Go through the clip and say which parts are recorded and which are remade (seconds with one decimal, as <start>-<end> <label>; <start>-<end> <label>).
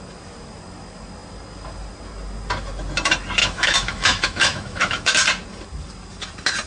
0.0-3.4 recorded; 3.4-5.1 remade; 5.1-6.7 recorded